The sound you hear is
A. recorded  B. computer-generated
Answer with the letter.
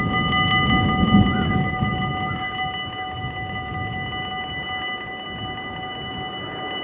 A